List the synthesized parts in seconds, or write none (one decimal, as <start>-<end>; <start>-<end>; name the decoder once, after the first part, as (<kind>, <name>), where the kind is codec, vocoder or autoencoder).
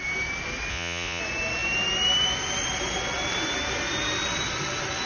0.7-1.2 (vocoder, Vocos)